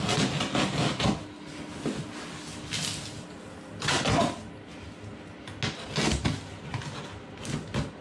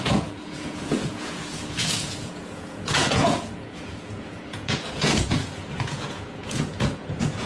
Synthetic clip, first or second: second